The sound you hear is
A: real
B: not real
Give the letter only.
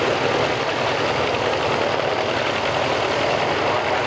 A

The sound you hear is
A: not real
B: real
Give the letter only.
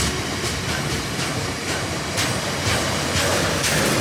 B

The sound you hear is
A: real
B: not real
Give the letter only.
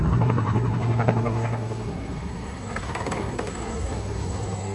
B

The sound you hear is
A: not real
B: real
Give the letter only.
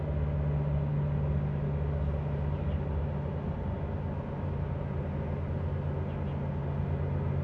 B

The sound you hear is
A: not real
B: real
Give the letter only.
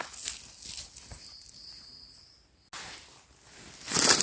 B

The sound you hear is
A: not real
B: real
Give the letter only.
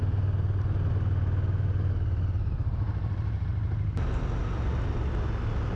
B